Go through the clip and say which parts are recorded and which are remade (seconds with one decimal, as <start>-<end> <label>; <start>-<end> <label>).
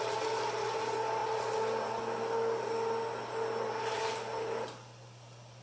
0.0-5.6 recorded